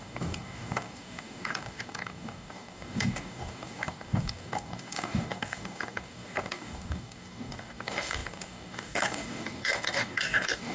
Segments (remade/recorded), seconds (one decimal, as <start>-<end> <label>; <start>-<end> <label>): 0.0-10.7 remade